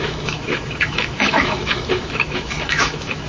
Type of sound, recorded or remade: remade